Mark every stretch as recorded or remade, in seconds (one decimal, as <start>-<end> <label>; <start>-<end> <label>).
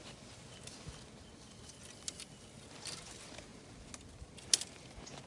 0.0-5.3 recorded